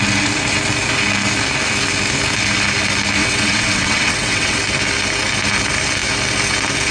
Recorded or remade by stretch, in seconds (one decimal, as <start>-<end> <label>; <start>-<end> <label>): 0.0-3.2 recorded; 3.2-4.6 remade; 4.6-6.9 recorded